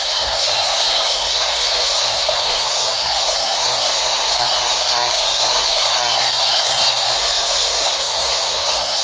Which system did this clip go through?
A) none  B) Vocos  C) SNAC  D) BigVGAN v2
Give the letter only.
C